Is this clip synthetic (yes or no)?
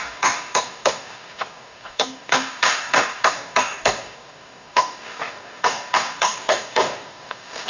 yes